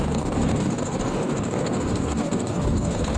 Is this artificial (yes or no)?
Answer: yes